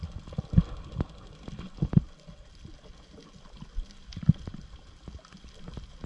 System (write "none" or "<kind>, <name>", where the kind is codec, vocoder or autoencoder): none